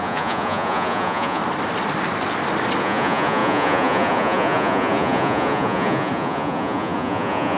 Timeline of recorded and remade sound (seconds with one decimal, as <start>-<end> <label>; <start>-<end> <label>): 0.0-1.4 remade; 1.4-2.8 recorded; 2.8-7.6 remade